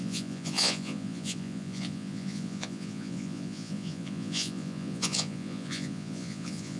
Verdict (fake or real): fake